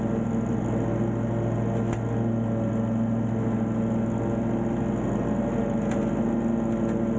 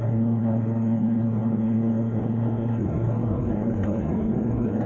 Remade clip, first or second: second